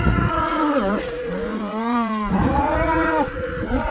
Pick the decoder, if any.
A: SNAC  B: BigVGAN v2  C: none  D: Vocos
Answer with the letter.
D